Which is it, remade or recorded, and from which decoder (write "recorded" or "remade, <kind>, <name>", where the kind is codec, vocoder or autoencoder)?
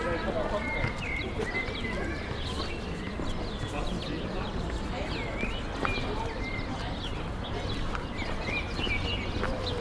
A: recorded